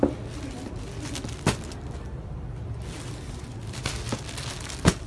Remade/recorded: recorded